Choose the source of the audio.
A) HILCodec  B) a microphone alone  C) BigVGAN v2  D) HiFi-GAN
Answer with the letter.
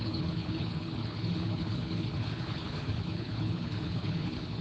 A